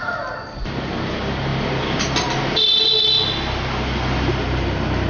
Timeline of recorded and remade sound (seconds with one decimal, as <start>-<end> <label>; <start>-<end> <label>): 0.0-5.1 recorded